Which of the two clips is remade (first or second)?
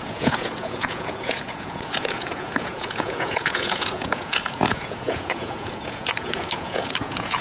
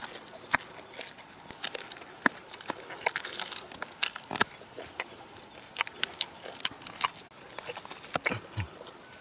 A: first